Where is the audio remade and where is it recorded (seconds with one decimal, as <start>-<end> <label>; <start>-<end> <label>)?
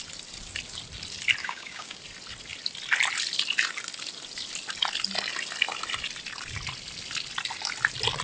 0.0-1.4 recorded; 1.4-2.0 remade; 2.0-8.2 recorded